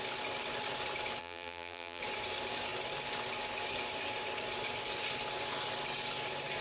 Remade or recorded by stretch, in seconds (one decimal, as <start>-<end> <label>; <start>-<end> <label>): 0.0-1.2 recorded; 1.2-2.0 remade; 2.0-6.6 recorded